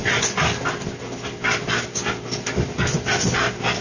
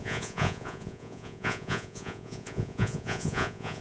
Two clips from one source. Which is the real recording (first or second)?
first